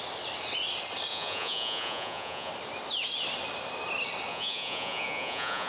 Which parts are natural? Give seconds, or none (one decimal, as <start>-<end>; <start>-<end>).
0.0-1.1; 2.5-4.3